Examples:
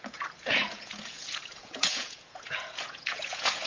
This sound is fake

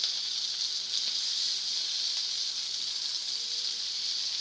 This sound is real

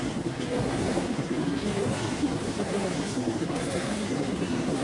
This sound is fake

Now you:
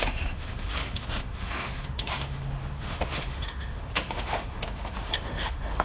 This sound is fake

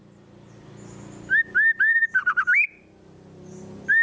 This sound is real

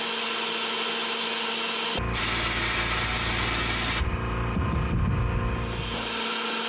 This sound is real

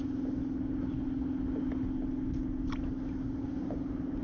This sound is real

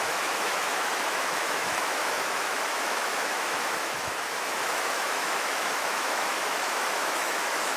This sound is fake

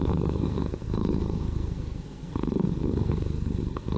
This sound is fake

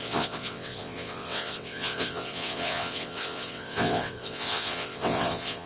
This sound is fake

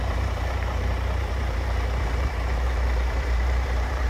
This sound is fake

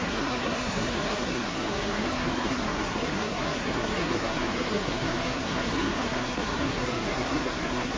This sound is fake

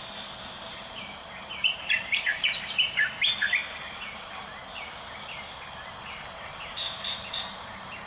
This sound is fake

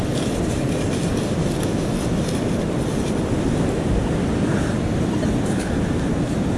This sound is real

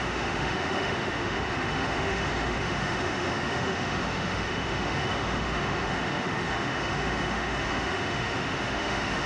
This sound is fake